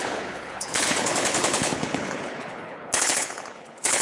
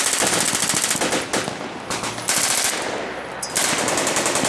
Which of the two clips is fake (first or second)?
first